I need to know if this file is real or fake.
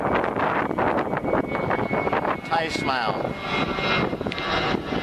real